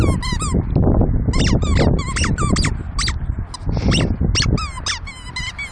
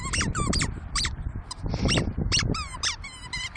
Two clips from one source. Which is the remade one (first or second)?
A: second